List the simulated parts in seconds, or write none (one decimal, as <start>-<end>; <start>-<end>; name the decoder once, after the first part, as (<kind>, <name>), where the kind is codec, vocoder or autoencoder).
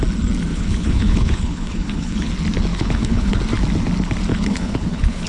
0.5-2.3 (codec, HILCodec); 2.7-3.4; 4.3-5.3